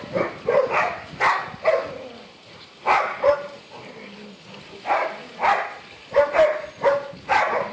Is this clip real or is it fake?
real